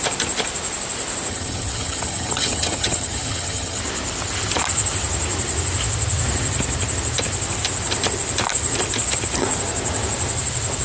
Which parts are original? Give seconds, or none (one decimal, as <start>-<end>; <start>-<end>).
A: 0.0-1.3; 3.8-10.8